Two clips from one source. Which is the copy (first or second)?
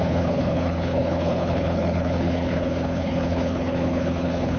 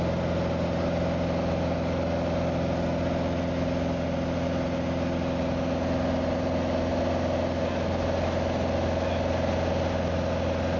first